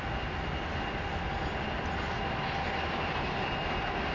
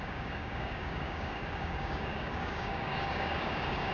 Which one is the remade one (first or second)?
second